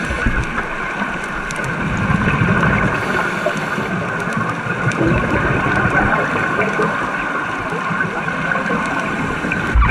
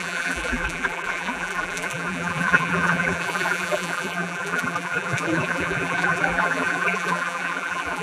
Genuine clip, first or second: first